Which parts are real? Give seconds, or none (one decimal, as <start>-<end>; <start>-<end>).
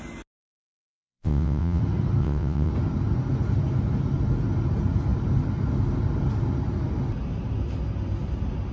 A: 0.0-0.4; 1.8-2.2; 2.7-8.7